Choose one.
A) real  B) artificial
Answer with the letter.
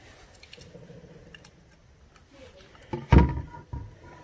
A